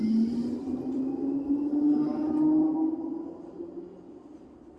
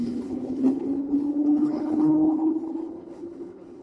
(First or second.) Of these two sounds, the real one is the first